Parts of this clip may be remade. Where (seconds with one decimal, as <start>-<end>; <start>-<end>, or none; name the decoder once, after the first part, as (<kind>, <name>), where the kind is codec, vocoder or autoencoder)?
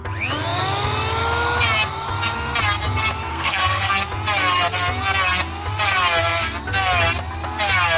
3.3-3.9 (codec, SNAC)